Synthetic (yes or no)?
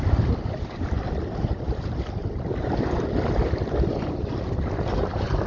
no